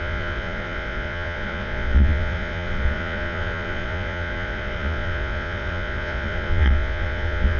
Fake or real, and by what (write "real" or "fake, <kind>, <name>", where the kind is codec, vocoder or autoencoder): fake, vocoder, Vocos